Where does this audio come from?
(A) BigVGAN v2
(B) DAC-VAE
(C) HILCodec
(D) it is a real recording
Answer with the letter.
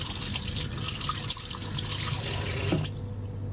D